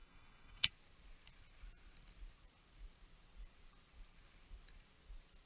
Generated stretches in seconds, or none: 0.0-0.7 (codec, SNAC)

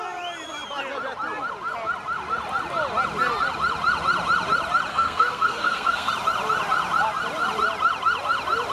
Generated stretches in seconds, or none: 4.9-6.1 (codec, SNAC)

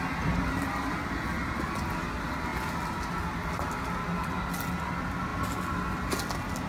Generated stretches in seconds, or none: none

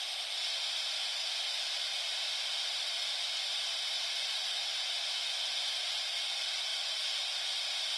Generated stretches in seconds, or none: 3.7-4.9 (vocoder, BigVGAN v2); 6.7-7.6

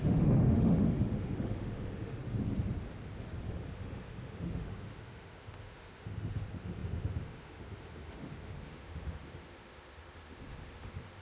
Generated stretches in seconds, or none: 0.0-2.2 (autoencoder, DAC-VAE); 3.7-11.2